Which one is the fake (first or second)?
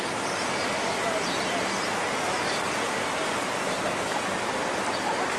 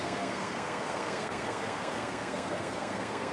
second